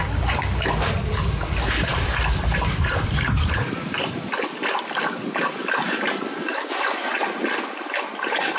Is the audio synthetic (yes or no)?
no